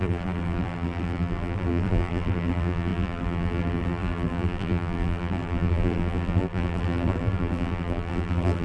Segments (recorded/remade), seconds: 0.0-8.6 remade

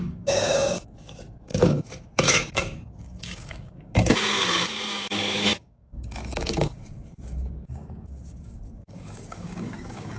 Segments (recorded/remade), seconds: 0.0-10.2 remade

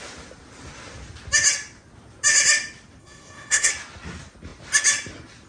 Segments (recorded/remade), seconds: 0.0-3.0 recorded; 3.0-3.7 remade; 3.7-5.5 recorded